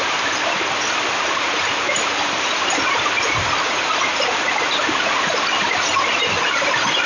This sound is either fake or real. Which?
real